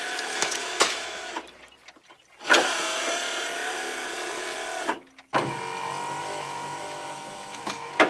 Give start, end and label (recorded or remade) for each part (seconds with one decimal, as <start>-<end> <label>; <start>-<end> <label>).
0.0-1.3 remade; 1.3-6.2 recorded; 6.2-8.1 remade